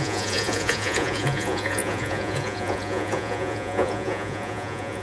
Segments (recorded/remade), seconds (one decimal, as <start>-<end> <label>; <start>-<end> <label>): 0.0-5.0 remade